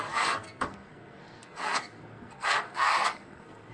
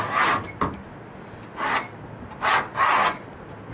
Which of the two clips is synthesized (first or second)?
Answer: first